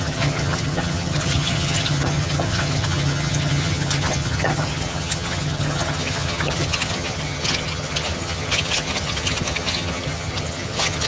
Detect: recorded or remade remade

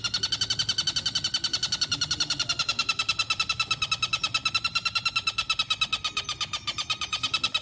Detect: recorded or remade recorded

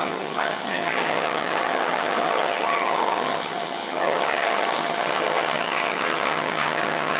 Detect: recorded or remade remade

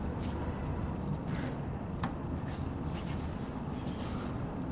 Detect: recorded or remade recorded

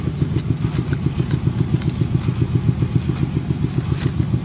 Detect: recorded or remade recorded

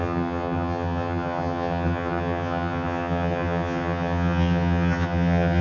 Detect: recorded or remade remade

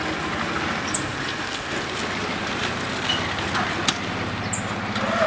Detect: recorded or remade recorded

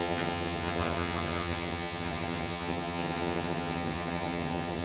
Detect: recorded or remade remade